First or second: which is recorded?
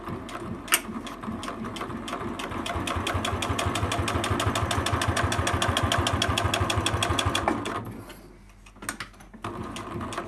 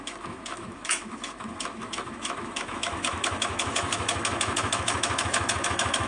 first